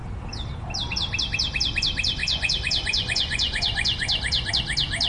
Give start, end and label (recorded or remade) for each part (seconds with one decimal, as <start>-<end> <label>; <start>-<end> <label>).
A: 0.0-2.2 recorded; 2.2-4.5 remade; 4.5-5.1 recorded

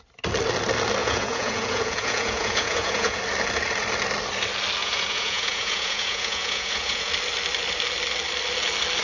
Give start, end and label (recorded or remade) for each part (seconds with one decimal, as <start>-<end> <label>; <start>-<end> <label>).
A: 0.0-1.0 recorded; 1.0-3.2 remade; 3.2-4.8 recorded; 4.8-7.1 remade; 7.1-9.0 recorded

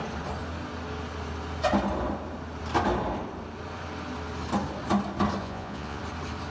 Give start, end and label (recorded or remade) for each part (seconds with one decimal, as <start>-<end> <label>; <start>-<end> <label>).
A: 0.0-5.4 recorded; 5.4-6.0 remade; 6.0-6.5 recorded

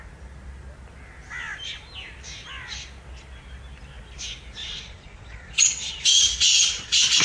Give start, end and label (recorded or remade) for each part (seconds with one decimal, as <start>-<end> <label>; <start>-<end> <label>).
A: 0.0-4.6 recorded; 4.6-7.2 remade

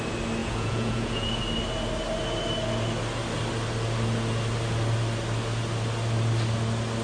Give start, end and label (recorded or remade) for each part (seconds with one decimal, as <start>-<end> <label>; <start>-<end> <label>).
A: 0.0-0.4 recorded; 0.4-1.4 remade; 1.4-7.0 recorded

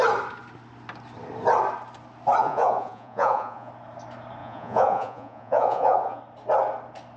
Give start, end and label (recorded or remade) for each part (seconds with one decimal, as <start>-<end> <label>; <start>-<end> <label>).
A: 0.0-2.4 recorded; 2.4-3.7 remade; 3.7-4.4 recorded; 4.4-6.2 remade; 6.2-7.2 recorded

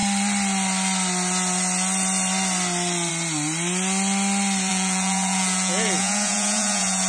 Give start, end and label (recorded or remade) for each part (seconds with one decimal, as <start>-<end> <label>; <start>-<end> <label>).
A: 0.0-4.7 recorded; 4.7-7.1 remade

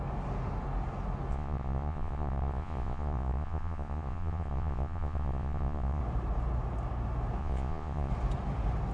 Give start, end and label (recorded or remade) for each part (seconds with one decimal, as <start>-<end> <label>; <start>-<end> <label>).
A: 0.0-1.3 recorded; 1.3-6.0 remade; 6.0-7.4 recorded; 7.4-8.1 remade; 8.1-8.9 recorded